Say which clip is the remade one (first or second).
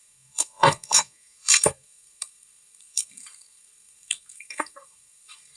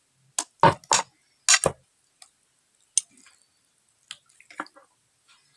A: first